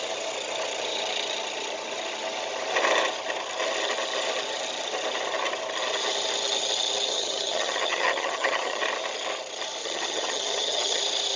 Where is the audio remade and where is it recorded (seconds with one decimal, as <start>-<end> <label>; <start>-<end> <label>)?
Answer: 0.0-7.1 recorded; 7.1-8.8 remade; 8.8-9.8 recorded; 9.8-11.0 remade; 11.0-11.4 recorded